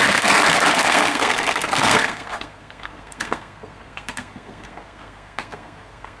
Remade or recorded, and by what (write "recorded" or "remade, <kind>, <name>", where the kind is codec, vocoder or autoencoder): remade, codec, SNAC